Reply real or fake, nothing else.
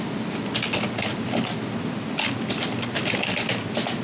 real